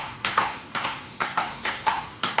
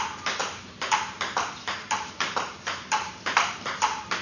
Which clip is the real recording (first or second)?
second